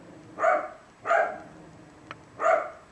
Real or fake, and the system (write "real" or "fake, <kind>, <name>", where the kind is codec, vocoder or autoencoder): real